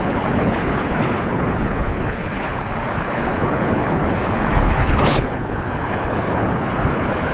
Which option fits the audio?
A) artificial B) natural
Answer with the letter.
A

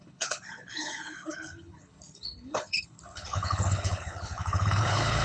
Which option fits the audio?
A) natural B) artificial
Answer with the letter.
B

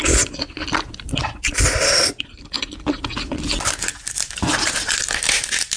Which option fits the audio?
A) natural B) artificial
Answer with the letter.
A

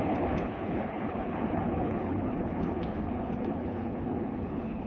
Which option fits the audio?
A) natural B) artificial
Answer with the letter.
B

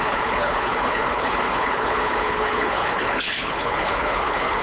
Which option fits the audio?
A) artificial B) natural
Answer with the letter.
A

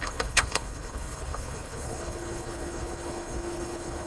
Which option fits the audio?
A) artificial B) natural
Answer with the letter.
A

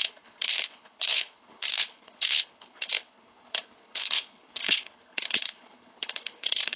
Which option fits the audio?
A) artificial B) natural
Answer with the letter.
A